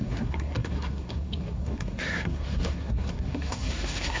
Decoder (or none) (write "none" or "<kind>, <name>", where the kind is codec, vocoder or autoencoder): codec, SNAC